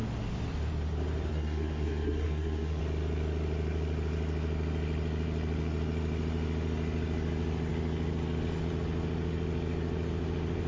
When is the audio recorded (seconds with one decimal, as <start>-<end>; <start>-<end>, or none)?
0.0-1.3; 2.8-10.7